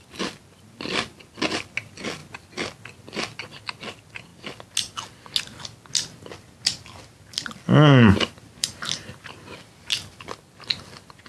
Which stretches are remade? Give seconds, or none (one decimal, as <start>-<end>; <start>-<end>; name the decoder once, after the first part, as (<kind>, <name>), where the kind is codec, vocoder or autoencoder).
8.6-9.3 (vocoder, BigVGAN v2)